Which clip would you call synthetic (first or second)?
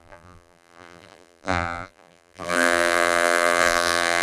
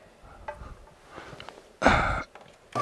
first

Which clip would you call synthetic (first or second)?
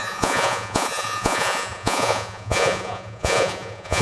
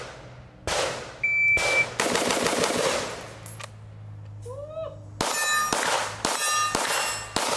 first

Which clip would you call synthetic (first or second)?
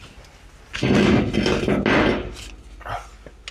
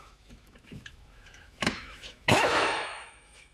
second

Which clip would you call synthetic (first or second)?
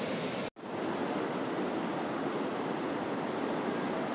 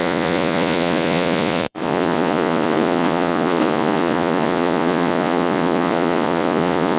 second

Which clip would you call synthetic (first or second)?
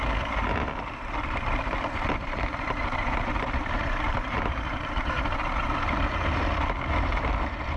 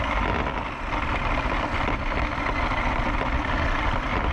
first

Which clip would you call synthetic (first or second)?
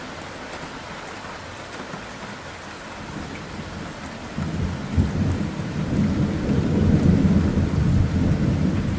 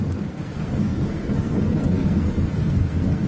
second